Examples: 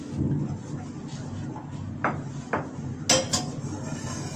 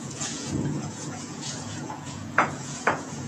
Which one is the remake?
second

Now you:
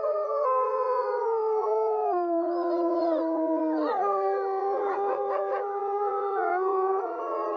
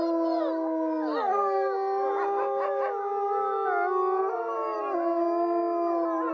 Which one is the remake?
first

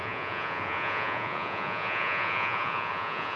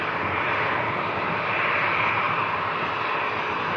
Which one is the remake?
first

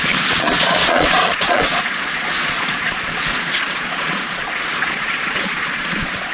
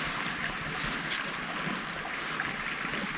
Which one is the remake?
first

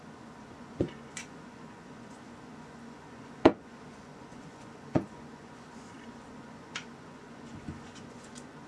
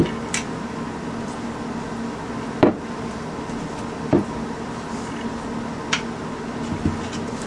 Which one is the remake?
first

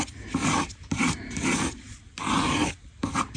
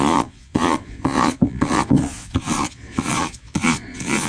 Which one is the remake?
second